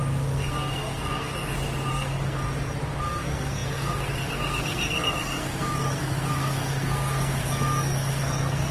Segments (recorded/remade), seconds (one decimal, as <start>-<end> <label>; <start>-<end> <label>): 0.0-1.3 remade; 1.3-1.9 recorded; 1.9-2.4 remade; 2.4-3.0 recorded; 3.0-8.7 remade